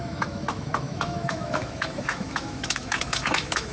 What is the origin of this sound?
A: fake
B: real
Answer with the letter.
A